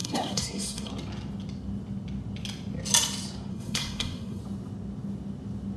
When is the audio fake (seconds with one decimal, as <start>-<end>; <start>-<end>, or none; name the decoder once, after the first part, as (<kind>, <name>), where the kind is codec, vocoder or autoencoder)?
0.0-0.9 (codec, SNAC); 3.5-4.4